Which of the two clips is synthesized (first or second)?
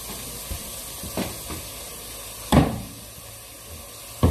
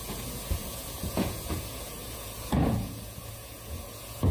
second